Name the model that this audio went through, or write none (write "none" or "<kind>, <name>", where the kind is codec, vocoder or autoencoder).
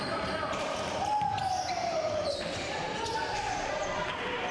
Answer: vocoder, BigVGAN v2